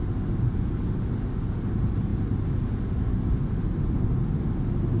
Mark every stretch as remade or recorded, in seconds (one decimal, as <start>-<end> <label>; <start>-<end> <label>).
0.0-5.0 recorded

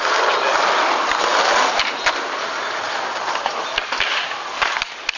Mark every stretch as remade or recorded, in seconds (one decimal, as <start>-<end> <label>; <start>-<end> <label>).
0.0-1.3 recorded; 1.3-3.5 remade; 3.5-5.2 recorded